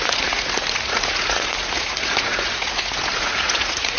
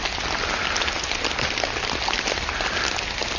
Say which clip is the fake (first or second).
first